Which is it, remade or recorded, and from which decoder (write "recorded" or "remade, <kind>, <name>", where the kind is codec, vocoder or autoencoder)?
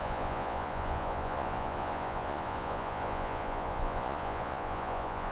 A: remade, vocoder, Vocos